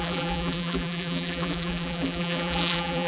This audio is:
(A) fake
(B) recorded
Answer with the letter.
A